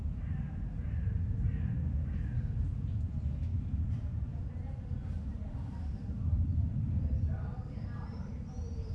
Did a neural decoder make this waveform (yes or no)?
yes